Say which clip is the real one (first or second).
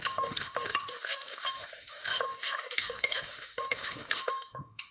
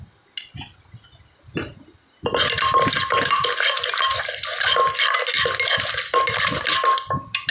second